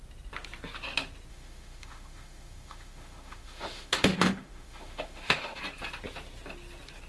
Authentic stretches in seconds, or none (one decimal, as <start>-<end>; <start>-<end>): 0.0-1.3; 5.6-7.1